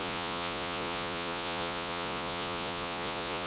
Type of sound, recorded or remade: remade